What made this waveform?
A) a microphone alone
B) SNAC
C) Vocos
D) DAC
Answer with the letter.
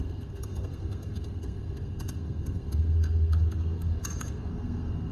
B